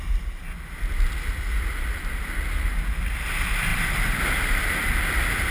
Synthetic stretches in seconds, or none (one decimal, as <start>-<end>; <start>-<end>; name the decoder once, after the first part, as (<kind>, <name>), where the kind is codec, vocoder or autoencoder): 3.7-5.5 (vocoder, BigVGAN v2)